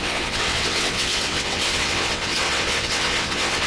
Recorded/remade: remade